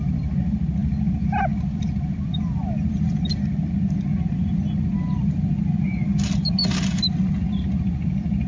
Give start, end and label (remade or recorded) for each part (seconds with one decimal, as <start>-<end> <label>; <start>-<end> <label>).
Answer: 0.0-8.5 recorded